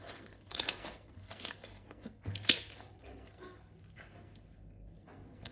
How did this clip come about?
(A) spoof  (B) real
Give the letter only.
A